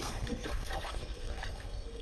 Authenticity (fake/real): fake